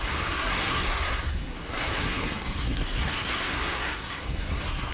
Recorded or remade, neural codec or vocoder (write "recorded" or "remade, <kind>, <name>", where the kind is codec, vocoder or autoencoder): remade, codec, SNAC